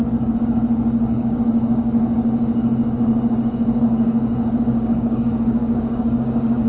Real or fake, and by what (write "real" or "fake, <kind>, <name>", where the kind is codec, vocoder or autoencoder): fake, codec, DAC